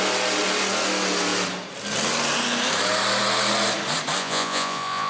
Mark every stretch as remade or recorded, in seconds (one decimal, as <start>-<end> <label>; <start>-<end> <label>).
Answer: 0.0-4.2 recorded; 4.2-5.1 remade